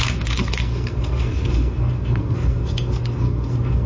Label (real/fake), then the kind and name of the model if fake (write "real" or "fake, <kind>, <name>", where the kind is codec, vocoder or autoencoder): fake, codec, SNAC